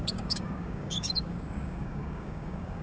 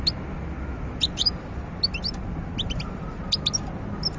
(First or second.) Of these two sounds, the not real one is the first